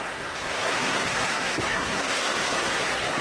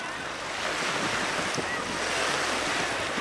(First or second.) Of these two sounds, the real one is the second